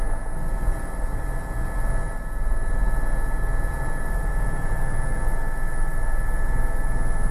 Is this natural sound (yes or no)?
yes